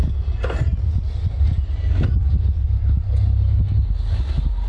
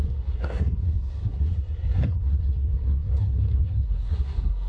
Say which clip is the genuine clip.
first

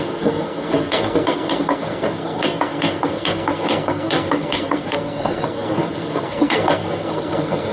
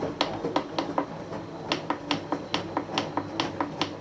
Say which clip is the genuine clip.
second